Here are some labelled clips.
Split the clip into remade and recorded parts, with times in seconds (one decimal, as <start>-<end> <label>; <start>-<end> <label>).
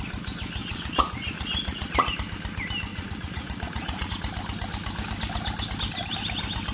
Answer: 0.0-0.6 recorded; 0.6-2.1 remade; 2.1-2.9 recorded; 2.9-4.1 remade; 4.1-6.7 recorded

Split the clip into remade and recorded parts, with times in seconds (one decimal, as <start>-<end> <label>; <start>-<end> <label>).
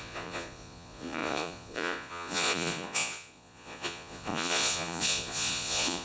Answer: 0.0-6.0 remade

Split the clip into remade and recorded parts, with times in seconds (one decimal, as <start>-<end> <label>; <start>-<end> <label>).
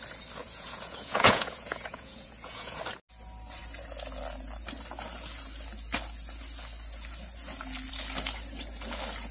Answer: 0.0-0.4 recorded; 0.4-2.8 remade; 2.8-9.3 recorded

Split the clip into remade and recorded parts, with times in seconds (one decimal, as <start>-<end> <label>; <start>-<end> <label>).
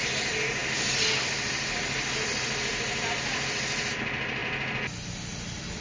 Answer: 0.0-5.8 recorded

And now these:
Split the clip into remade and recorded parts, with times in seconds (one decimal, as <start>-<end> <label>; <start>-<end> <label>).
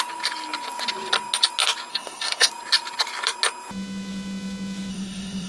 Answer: 0.0-1.9 recorded; 1.9-2.5 remade; 2.5-4.9 recorded; 4.9-5.5 remade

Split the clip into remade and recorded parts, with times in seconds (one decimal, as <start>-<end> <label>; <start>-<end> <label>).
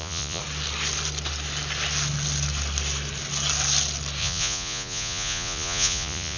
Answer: 0.0-0.4 remade; 0.4-4.2 recorded; 4.2-6.4 remade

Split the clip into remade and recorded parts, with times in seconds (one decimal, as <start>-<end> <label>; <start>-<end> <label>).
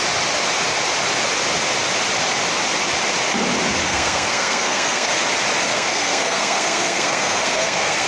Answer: 0.0-3.8 recorded; 3.8-5.1 remade; 5.1-5.7 recorded; 5.7-8.1 remade